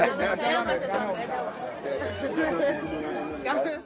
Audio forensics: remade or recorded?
recorded